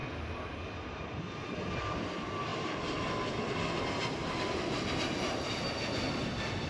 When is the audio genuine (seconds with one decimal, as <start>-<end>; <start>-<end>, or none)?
0.0-6.7